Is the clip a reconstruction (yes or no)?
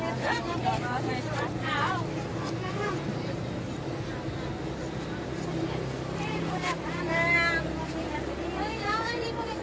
no